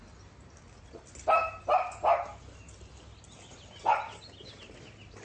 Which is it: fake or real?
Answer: real